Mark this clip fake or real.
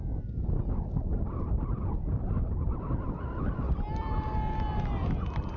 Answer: real